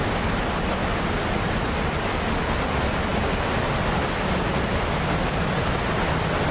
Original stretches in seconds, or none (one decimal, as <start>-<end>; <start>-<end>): 0.0-6.5